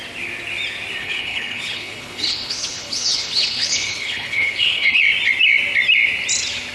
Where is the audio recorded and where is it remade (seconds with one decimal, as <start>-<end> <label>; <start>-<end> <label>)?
0.0-1.0 recorded; 1.0-5.0 remade; 5.0-6.7 recorded